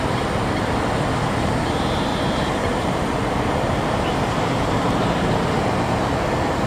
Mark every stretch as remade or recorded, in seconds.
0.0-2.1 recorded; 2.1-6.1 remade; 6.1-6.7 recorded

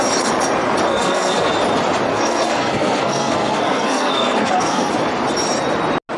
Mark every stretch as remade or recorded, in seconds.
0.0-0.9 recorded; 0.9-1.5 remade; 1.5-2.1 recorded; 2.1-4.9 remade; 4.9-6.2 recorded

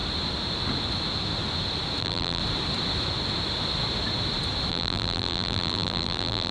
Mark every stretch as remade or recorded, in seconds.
0.0-2.0 recorded; 2.0-2.4 remade; 2.4-4.7 recorded; 4.7-6.5 remade

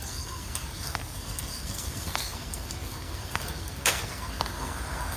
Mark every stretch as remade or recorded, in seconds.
0.0-5.2 remade